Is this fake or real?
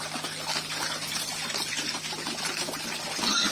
fake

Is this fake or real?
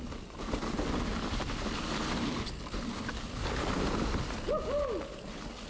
real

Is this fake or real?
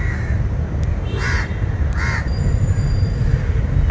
fake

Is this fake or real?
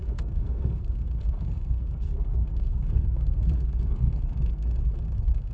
fake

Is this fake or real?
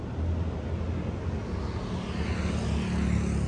real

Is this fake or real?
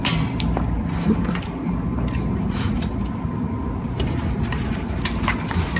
real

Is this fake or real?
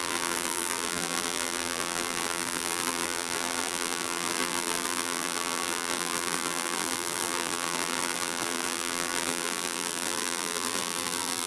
fake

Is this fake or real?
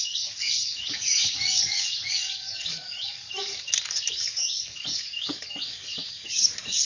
fake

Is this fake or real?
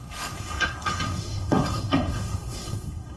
fake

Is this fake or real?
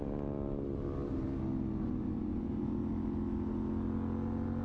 real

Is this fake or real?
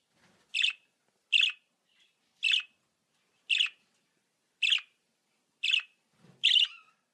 real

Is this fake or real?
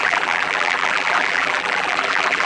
fake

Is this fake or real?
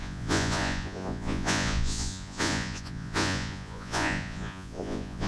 fake